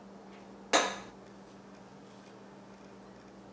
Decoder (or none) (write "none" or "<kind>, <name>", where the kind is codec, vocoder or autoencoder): none